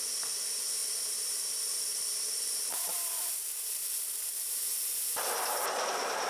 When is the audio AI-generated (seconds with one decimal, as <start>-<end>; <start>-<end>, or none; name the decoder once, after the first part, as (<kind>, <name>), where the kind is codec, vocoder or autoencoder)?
0.0-6.3 (vocoder, BigVGAN v2)